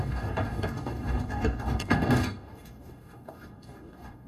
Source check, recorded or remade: remade